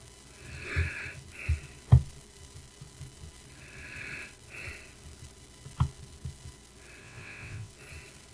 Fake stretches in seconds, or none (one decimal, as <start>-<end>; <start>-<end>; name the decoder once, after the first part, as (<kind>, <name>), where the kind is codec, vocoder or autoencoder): 7.0-7.7 (vocoder, WaveNeXt)